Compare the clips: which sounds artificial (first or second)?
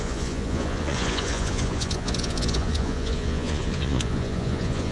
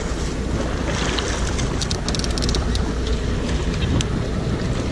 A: first